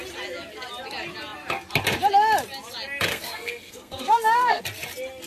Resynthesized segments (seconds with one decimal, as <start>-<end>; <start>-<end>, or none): 3.1-4.6